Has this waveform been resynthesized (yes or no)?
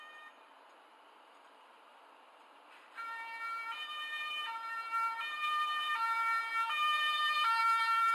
no